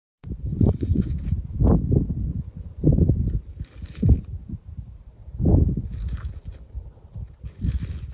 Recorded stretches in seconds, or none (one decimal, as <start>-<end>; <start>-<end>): 0.0-0.5; 1.1-2.3; 2.9-8.1